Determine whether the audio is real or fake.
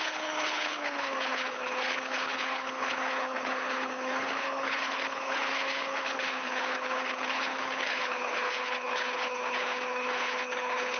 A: fake